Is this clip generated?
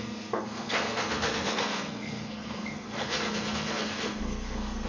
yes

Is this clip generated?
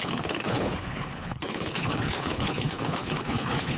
yes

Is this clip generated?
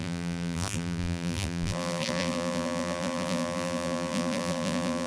yes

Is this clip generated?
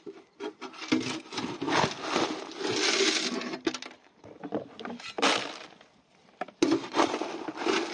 no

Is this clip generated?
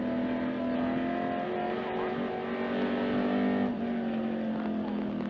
no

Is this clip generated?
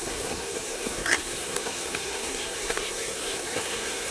yes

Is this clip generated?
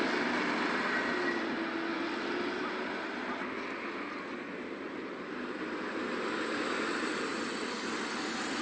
no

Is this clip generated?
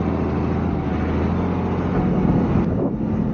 no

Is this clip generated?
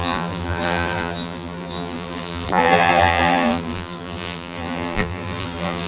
yes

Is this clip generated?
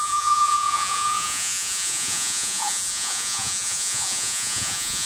yes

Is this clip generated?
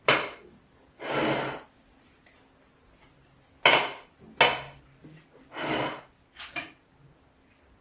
no